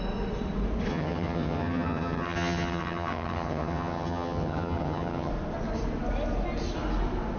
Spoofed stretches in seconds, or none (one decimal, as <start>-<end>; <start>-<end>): 0.9-5.3